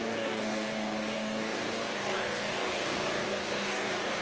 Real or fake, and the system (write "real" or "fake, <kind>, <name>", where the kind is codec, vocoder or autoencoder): fake, codec, DAC